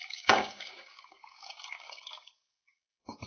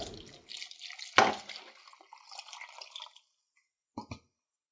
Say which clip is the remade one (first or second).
first